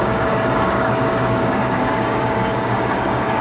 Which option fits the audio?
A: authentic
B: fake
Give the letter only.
B